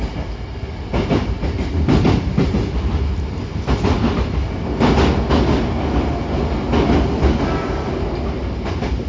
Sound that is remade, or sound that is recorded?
recorded